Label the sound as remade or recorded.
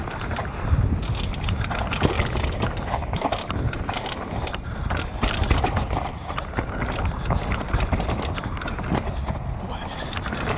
recorded